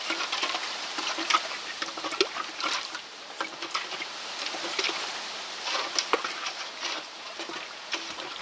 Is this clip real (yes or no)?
no